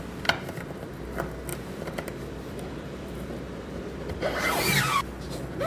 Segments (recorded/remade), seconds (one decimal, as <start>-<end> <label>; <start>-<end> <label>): 0.0-1.5 recorded; 1.5-4.8 remade; 4.8-5.7 recorded